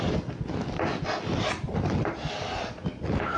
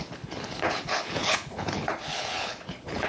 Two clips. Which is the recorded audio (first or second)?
first